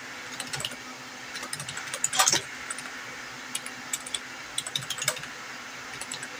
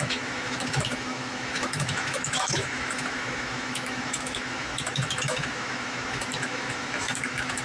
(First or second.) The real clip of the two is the first